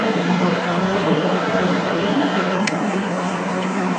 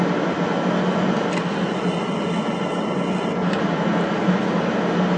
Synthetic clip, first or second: first